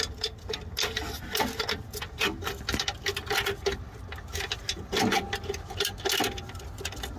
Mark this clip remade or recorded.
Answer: recorded